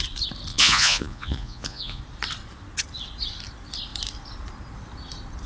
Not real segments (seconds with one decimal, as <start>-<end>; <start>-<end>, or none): 0.5-2.0